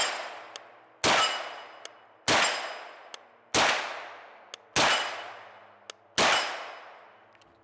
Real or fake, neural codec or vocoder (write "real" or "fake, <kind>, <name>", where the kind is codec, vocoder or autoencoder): real